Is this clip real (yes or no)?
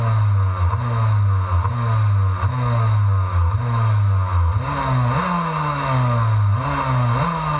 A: yes